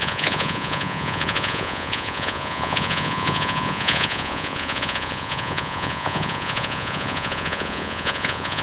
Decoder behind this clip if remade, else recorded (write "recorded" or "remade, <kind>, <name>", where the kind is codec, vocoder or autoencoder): remade, vocoder, Vocos